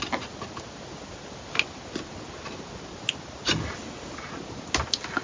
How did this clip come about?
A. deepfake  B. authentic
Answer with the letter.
B